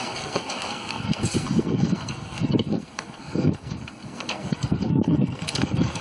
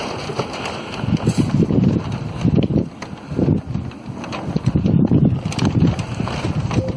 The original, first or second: second